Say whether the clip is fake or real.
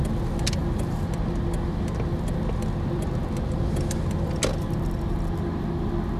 real